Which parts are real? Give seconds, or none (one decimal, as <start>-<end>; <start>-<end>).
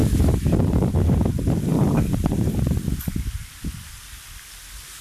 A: 1.2-5.0